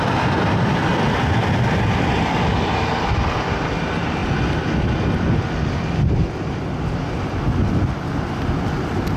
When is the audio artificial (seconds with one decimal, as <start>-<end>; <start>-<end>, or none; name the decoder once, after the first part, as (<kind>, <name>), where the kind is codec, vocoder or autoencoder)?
none